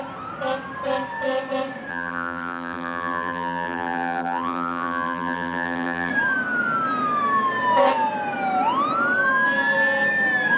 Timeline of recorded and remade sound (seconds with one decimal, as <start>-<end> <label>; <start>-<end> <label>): 0.0-1.9 recorded; 1.9-6.1 remade; 6.1-10.6 recorded